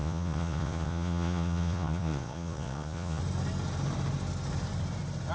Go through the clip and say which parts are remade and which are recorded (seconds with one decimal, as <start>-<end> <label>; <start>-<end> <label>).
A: 0.0-3.2 remade; 3.2-5.3 recorded